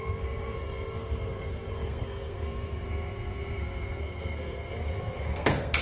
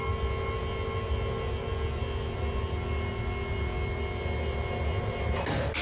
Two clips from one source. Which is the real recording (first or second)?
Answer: second